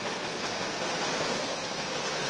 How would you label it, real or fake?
fake